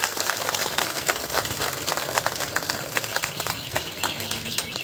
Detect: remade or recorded remade